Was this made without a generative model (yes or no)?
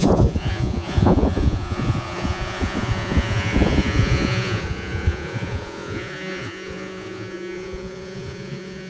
no